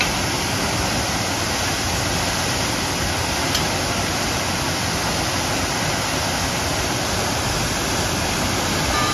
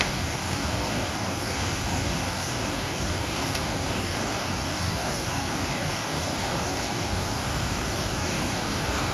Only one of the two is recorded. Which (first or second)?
first